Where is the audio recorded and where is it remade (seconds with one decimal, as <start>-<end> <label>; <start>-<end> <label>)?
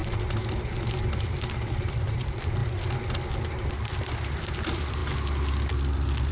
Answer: 0.0-2.2 recorded; 2.2-2.6 remade; 2.6-3.7 recorded; 3.7-5.0 remade; 5.0-6.3 recorded